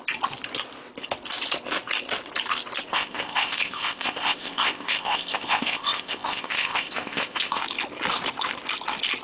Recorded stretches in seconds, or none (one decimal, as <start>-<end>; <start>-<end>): 0.0-2.9; 7.6-9.2